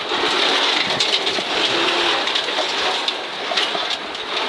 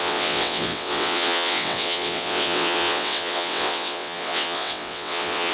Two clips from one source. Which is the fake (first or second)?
second